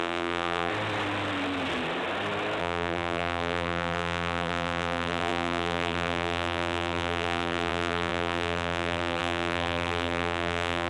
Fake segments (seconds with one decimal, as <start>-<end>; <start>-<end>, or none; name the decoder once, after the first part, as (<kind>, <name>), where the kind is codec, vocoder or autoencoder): 0.0-0.7 (vocoder, BigVGAN v2); 2.6-10.9